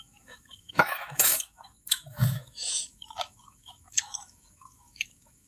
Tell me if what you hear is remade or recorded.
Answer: remade